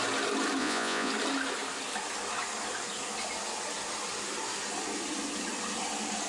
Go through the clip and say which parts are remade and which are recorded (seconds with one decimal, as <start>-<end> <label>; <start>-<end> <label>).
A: 0.0-0.6 recorded; 0.6-1.1 remade; 1.1-6.3 recorded